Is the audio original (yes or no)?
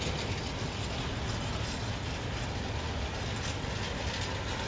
yes